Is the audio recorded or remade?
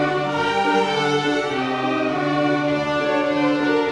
recorded